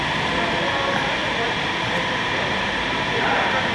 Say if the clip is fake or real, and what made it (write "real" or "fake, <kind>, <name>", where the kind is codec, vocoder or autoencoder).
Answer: real